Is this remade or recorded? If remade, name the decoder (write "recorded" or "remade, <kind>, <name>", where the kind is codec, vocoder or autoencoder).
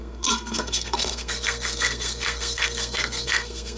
remade, codec, SNAC